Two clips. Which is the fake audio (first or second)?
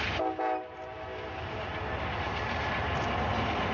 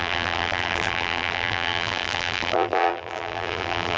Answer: second